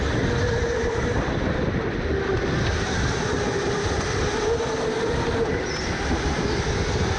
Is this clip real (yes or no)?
yes